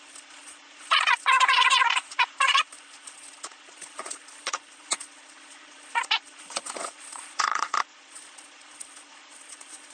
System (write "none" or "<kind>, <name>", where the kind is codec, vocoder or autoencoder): vocoder, Vocos